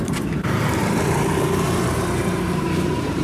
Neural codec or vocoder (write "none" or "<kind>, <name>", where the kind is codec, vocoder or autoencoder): vocoder, BigVGAN v2